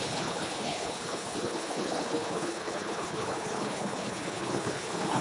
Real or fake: fake